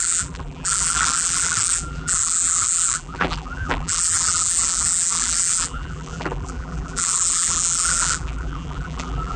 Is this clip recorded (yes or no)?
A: no